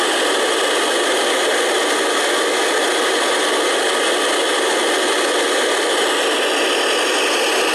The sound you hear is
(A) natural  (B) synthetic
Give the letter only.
A